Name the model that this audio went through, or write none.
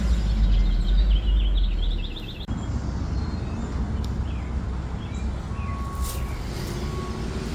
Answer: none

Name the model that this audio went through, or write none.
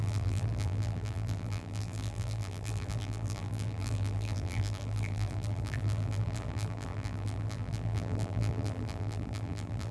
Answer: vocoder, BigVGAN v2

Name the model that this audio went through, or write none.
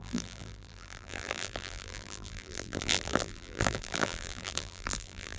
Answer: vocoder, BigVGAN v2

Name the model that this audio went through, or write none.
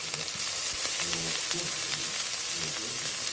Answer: none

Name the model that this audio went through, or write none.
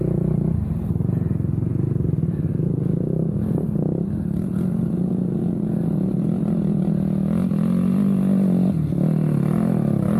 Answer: none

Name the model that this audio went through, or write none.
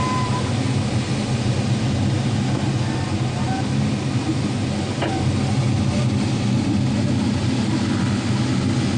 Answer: none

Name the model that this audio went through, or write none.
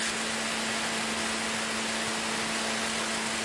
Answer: none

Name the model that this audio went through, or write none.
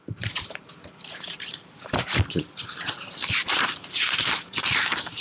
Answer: vocoder, BigVGAN v2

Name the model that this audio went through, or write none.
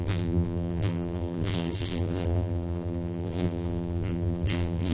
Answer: vocoder, BigVGAN v2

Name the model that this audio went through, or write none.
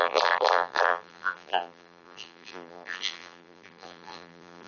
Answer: vocoder, BigVGAN v2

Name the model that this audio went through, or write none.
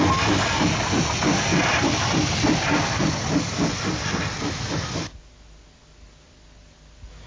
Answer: none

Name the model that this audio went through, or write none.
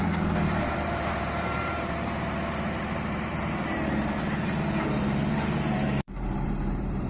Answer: vocoder, BigVGAN v2